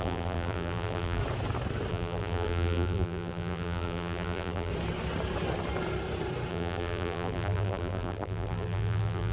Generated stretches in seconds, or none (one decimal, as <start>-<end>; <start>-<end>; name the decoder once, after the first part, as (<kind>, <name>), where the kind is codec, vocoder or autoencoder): 0.0-1.2 (vocoder, BigVGAN v2); 1.9-4.7; 6.5-9.3